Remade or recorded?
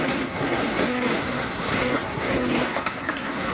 remade